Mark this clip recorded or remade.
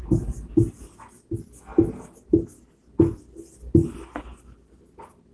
recorded